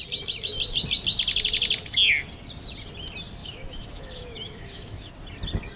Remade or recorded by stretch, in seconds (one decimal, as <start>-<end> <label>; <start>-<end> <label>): 0.0-3.4 recorded; 3.4-5.1 remade; 5.1-5.8 recorded